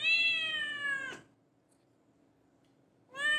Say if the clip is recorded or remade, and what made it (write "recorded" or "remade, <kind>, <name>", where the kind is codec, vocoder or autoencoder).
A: recorded